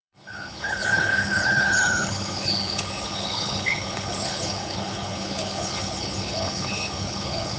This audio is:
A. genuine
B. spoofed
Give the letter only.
B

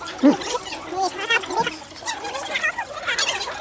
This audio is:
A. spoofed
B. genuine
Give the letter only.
B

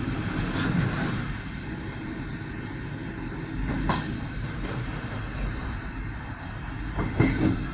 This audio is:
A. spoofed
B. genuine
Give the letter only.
B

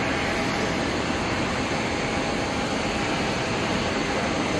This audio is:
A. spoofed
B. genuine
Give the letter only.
B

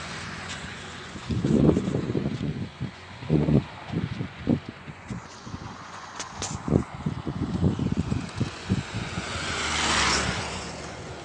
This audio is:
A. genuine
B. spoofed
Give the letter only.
B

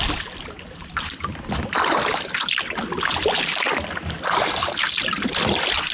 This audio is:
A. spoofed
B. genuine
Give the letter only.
B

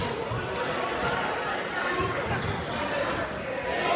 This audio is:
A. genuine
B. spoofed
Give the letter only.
A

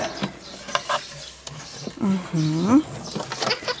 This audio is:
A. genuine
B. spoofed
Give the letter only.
A